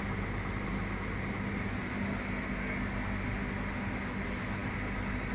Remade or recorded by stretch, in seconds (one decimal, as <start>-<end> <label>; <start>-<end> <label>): 0.0-5.3 recorded